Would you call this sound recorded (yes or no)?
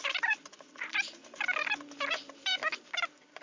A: yes